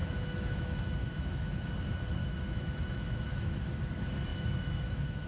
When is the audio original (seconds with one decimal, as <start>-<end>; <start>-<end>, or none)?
1.7-2.2; 3.6-4.3